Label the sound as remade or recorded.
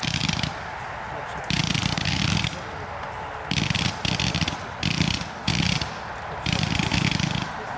recorded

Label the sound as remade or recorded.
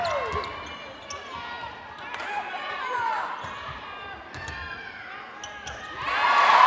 recorded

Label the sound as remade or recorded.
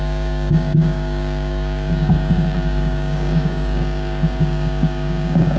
remade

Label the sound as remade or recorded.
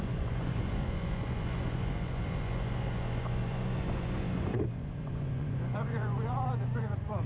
remade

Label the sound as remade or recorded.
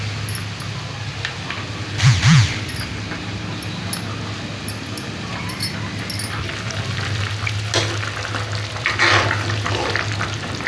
recorded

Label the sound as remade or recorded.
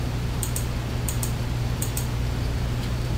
remade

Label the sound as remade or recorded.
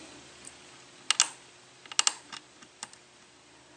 recorded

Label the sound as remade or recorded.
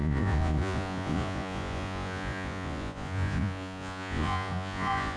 remade